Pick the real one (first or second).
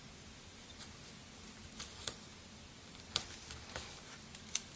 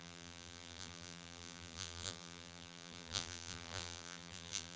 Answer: first